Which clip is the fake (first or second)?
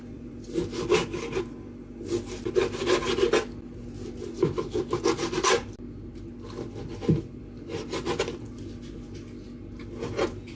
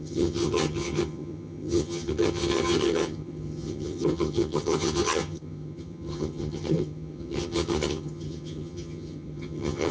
second